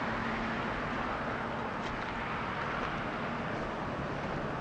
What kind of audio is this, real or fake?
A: real